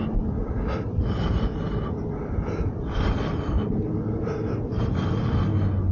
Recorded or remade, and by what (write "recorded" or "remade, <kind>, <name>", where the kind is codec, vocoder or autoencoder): recorded